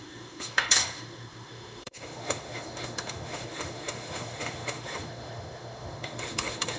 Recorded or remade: remade